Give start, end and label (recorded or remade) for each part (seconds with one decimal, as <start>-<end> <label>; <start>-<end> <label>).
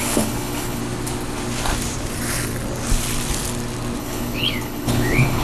0.0-0.8 remade; 0.8-4.0 recorded; 4.0-5.4 remade